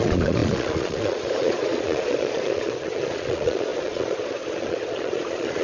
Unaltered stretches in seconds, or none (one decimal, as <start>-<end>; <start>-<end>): none

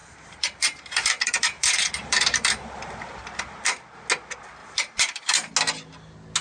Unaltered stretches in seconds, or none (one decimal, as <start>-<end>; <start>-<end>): 3.8-4.6; 5.5-6.4

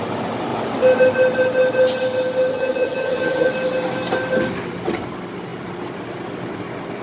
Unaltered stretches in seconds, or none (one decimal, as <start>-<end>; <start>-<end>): 0.0-2.5; 3.5-7.0

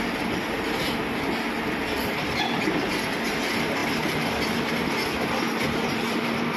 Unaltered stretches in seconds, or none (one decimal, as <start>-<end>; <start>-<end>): 0.0-6.6

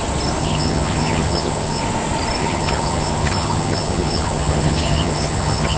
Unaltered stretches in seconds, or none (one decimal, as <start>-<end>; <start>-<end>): 0.0-0.4; 1.8-2.4

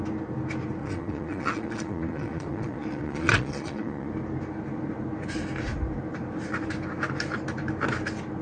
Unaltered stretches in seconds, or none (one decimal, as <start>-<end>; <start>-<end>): 0.0-0.8; 4.1-8.4

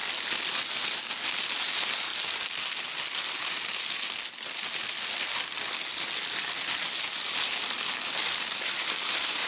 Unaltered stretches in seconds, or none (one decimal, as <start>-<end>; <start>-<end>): 0.6-9.5